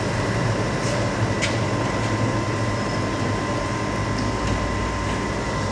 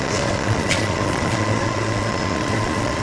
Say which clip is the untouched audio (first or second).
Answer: first